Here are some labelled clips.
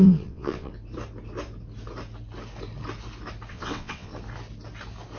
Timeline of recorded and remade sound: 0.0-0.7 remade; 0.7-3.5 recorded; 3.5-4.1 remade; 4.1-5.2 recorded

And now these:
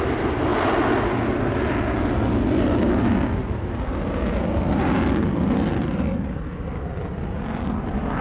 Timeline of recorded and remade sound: 0.0-8.2 recorded